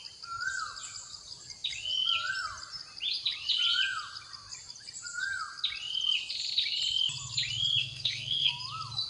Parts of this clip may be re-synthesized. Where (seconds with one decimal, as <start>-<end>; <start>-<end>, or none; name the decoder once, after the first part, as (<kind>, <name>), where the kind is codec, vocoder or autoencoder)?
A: 7.8-8.5 (codec, SNAC)